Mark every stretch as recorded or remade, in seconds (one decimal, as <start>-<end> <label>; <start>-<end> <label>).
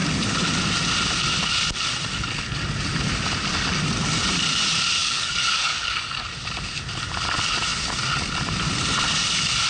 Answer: 0.0-5.0 recorded; 5.0-6.3 remade; 6.3-9.7 recorded